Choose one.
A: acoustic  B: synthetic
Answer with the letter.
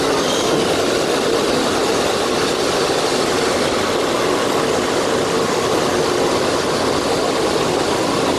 A